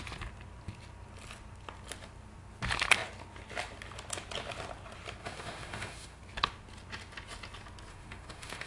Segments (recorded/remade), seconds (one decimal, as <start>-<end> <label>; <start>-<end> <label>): 0.0-5.2 recorded; 5.2-6.2 remade; 6.2-7.9 recorded; 7.9-8.7 remade